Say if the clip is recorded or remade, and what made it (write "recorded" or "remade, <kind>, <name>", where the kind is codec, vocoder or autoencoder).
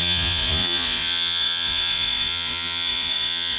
remade, vocoder, Vocos